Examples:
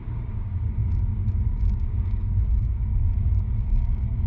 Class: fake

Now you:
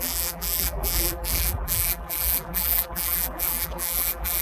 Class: fake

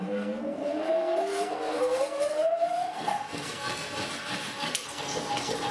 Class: fake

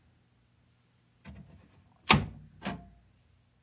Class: real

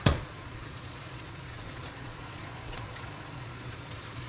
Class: fake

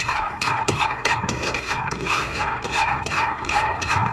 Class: fake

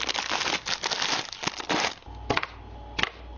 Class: real